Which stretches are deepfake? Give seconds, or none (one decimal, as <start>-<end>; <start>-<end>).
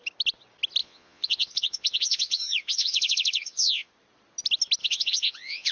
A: 0.8-3.9; 4.8-5.7